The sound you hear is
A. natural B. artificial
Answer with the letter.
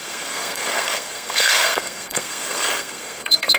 B